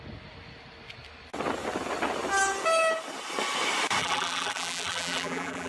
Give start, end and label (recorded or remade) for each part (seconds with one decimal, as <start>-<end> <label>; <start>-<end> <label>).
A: 0.0-4.0 recorded; 4.0-5.7 remade